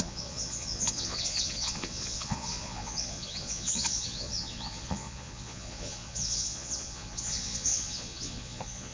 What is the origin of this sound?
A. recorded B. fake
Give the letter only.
B